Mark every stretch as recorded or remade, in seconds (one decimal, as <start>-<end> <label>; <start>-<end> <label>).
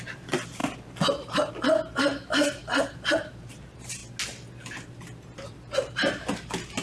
0.0-0.6 remade; 0.6-1.5 recorded; 1.5-4.0 remade; 4.0-5.2 recorded; 5.2-6.8 remade